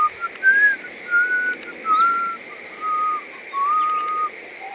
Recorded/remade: recorded